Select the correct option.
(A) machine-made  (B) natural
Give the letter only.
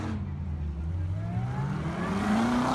B